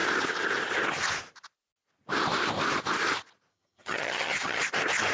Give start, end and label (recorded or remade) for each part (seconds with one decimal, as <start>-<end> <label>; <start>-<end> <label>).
0.0-3.5 recorded; 3.5-4.6 remade; 4.6-5.1 recorded